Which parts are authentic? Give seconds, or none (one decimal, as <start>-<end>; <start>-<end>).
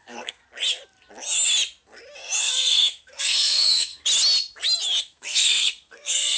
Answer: 0.4-2.4; 3.9-5.0